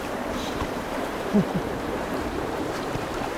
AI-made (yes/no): yes